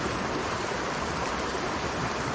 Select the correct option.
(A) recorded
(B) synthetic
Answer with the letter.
B